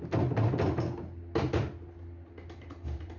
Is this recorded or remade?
recorded